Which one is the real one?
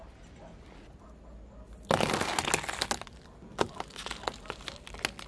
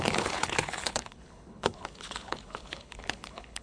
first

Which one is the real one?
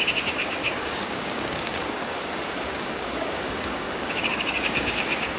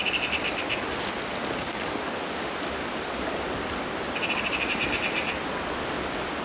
second